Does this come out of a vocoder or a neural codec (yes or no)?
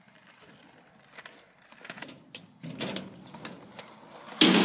no